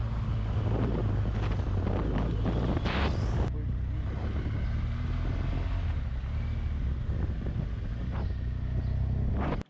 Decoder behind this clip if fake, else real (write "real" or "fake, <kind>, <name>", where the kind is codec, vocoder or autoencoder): real